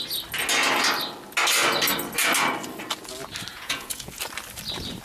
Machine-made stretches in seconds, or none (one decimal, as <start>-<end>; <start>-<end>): 3.5-4.2